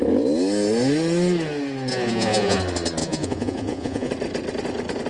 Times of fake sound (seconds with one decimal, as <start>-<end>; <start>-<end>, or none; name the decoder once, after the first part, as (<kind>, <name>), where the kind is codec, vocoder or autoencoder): 1.9-2.6 (vocoder, Vocos); 3.0-4.1